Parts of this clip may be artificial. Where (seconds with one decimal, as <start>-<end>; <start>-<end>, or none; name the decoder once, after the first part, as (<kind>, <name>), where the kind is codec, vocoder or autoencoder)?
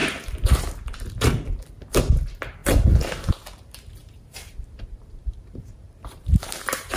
4.0-7.0 (vocoder, BigVGAN v2)